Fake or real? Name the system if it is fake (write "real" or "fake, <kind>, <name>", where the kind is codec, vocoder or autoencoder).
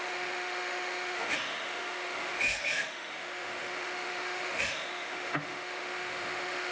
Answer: fake, autoencoder, DAC-VAE